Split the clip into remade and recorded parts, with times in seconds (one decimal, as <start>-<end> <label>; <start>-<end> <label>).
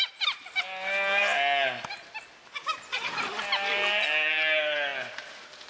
0.0-5.7 recorded